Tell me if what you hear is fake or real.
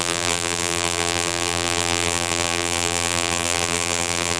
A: fake